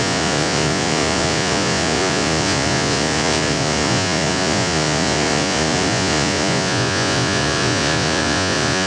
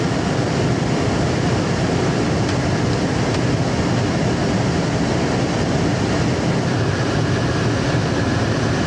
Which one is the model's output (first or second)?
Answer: first